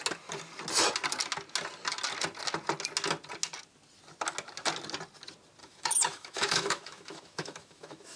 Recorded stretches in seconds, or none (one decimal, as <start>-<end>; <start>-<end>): 0.0-5.6